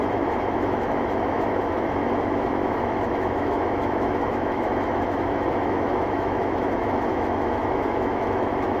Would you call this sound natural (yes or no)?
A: no